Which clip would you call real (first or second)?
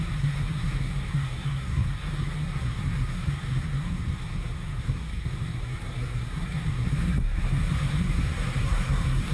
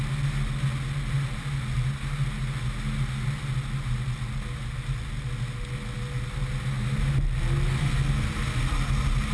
second